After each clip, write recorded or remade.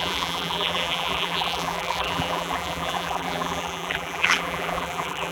remade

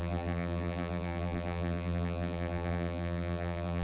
remade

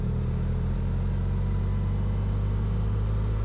recorded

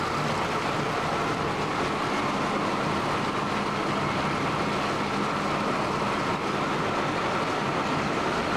recorded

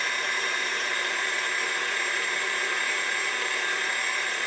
remade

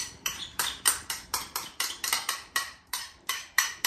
remade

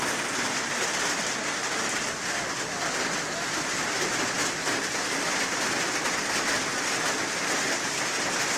recorded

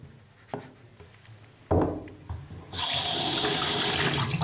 recorded